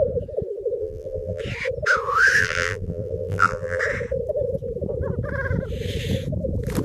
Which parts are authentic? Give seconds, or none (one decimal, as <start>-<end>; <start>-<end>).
0.0-0.8; 1.4-2.4; 3.8-6.8